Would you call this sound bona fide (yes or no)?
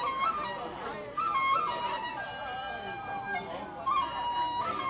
yes